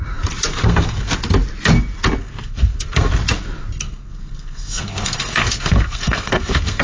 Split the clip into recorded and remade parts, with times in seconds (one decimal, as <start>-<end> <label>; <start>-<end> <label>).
0.0-0.5 recorded; 0.5-1.1 remade; 1.1-2.2 recorded; 2.2-3.1 remade; 3.1-3.8 recorded; 3.8-6.8 remade